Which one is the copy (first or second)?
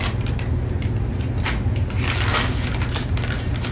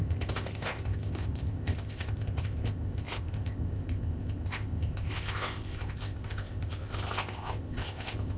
second